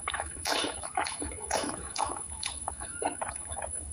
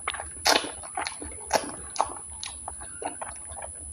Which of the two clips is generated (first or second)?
first